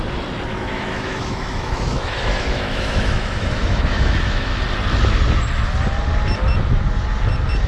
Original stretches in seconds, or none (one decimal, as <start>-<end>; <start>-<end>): 0.0-0.5; 4.6-7.7